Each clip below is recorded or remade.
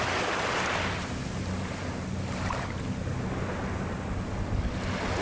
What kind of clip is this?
recorded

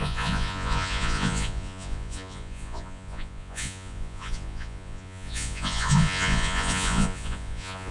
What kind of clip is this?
remade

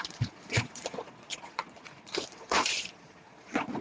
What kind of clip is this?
remade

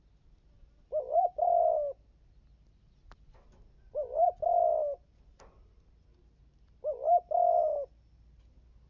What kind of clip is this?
recorded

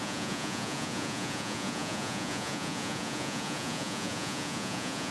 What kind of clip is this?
remade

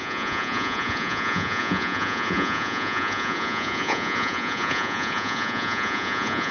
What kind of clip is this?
remade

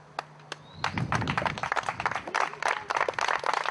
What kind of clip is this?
recorded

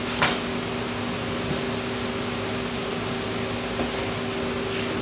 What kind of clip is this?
recorded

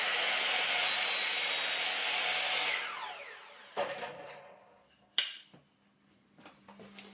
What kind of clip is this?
recorded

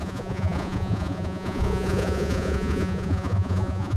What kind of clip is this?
remade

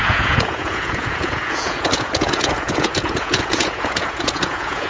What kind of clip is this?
remade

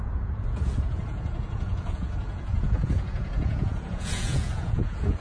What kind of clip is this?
remade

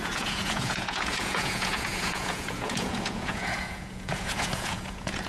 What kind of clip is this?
remade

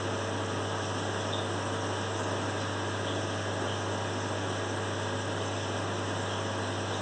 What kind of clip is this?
recorded